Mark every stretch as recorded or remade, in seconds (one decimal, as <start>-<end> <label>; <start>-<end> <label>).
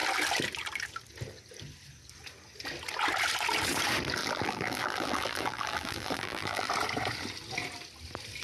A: 0.0-4.2 recorded; 4.2-6.7 remade; 6.7-8.4 recorded